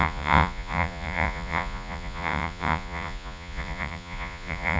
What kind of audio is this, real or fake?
fake